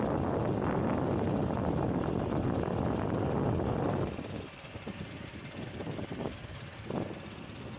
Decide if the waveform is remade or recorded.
recorded